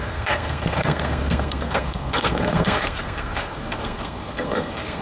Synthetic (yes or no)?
yes